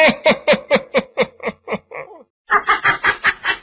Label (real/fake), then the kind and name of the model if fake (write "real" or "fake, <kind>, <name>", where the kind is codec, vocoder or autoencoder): real